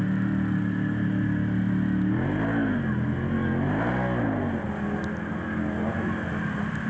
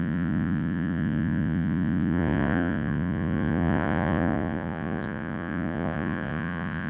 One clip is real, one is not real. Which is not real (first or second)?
second